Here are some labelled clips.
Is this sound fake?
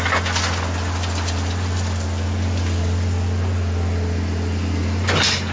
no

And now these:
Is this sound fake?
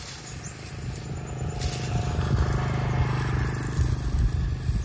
no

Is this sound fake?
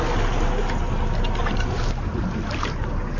no